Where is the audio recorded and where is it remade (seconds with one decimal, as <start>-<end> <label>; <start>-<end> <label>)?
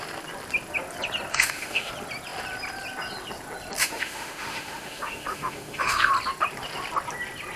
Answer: 0.0-1.3 recorded; 1.3-1.9 remade; 1.9-3.8 recorded; 3.8-6.1 remade; 6.1-7.6 recorded